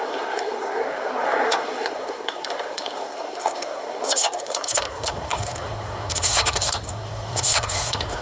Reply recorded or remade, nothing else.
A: remade